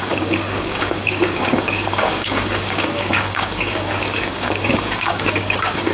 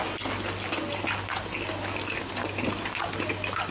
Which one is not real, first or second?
first